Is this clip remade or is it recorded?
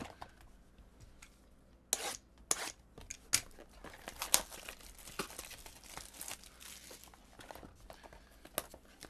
recorded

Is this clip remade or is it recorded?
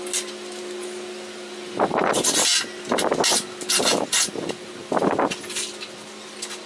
recorded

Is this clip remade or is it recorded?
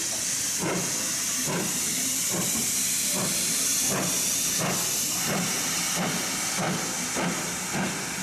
recorded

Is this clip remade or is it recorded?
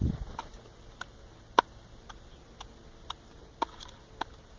recorded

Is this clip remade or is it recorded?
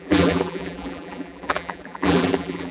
remade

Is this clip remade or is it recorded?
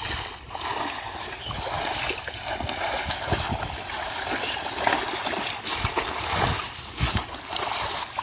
recorded